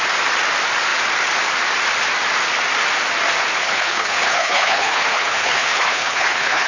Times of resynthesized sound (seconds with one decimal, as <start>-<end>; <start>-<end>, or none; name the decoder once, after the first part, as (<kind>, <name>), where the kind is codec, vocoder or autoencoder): 3.6-6.7 (codec, HILCodec)